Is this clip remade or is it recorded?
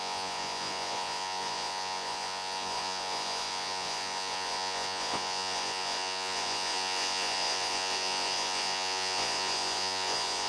remade